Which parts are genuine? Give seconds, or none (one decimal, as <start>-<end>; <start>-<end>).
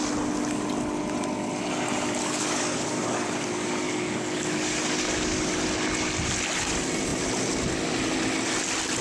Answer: 0.0-2.2; 5.5-9.0